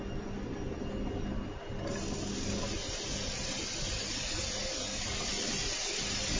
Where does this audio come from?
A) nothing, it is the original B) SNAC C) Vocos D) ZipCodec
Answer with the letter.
A